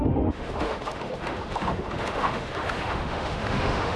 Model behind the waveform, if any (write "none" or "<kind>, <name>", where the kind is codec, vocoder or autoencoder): autoencoder, DAC-VAE